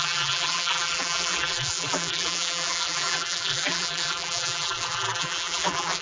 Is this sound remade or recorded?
remade